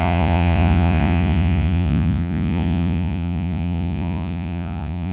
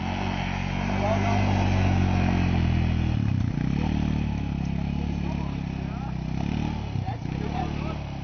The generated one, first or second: first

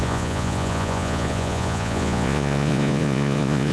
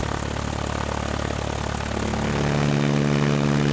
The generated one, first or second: first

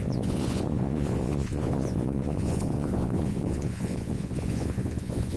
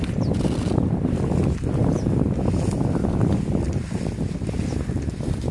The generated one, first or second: first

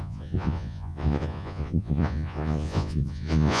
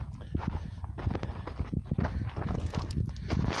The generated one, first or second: first